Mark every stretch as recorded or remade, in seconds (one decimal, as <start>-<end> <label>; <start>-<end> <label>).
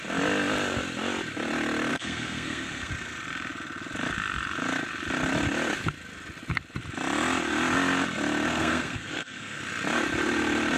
0.0-1.9 recorded; 1.9-2.9 remade; 2.9-8.5 recorded; 8.5-9.6 remade; 9.6-10.8 recorded